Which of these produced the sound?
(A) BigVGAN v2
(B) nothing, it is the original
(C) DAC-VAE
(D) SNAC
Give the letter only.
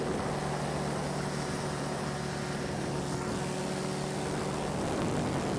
B